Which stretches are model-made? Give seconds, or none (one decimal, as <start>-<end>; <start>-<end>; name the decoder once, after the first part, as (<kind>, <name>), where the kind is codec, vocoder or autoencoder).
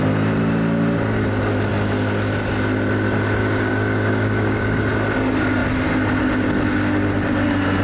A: 3.4-4.8 (codec, DAC)